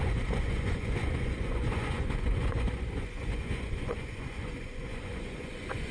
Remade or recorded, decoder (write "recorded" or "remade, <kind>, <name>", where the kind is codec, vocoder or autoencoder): remade, vocoder, Vocos